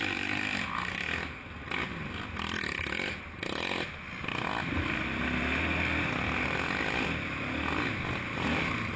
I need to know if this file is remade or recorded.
recorded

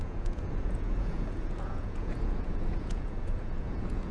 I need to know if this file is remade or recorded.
remade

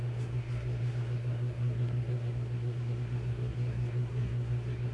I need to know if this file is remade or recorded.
remade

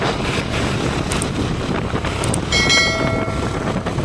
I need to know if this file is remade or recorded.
recorded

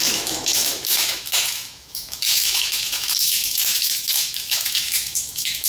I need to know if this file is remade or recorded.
remade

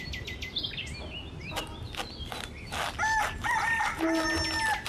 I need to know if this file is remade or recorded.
recorded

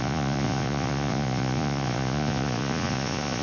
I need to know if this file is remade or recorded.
remade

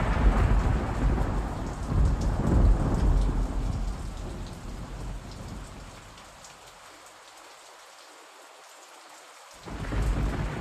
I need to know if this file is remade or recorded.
recorded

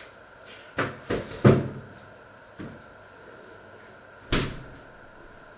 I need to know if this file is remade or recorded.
recorded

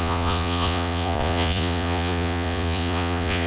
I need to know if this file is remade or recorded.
remade